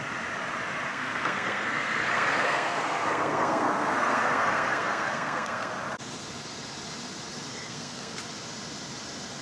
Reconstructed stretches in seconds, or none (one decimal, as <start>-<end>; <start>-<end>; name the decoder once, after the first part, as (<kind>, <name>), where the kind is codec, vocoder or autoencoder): 0.9-5.7 (codec, SNAC); 7.5-8.2